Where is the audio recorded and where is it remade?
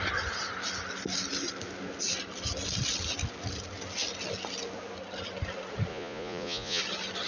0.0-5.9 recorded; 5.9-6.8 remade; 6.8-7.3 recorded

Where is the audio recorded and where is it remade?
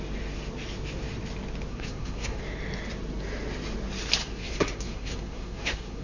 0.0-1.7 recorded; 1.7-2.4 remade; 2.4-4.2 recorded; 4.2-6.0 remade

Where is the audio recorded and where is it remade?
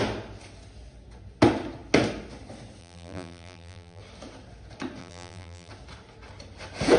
0.0-2.8 recorded; 2.8-4.0 remade; 4.0-5.0 recorded; 5.0-5.7 remade; 5.7-7.0 recorded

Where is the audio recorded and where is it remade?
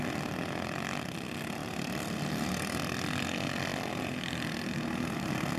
0.0-1.6 recorded; 1.6-2.8 remade; 2.8-5.6 recorded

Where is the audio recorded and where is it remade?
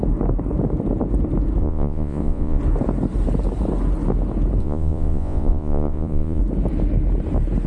0.0-1.6 recorded; 1.6-2.6 remade; 2.6-4.6 recorded; 4.6-6.4 remade; 6.4-7.7 recorded